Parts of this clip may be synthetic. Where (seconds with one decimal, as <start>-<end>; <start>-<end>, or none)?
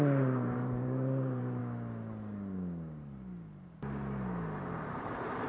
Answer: 0.0-1.6; 4.9-5.5